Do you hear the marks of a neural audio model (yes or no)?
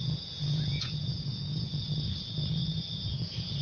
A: yes